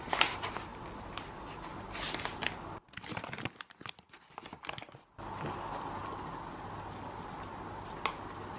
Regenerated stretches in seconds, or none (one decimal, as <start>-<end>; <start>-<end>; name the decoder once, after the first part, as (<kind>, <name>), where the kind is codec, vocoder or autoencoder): none

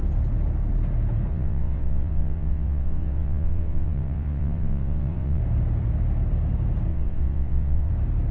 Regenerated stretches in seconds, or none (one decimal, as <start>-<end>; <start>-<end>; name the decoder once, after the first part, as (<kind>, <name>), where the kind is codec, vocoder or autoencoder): 1.3-5.4 (vocoder, WaveNeXt); 6.9-7.9

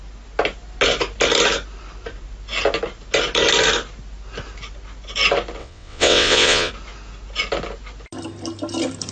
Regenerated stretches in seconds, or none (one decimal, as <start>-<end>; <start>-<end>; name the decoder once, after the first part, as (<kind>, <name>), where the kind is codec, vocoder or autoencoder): 5.6-6.7 (vocoder, WaveNeXt)